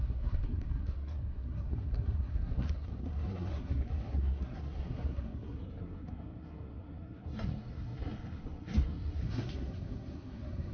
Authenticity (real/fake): fake